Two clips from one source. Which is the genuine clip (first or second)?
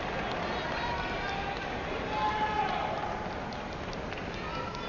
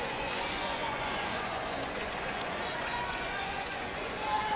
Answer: first